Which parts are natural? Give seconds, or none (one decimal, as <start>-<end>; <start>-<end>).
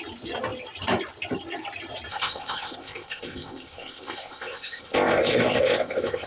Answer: 0.0-2.1